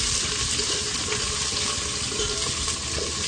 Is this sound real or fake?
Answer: real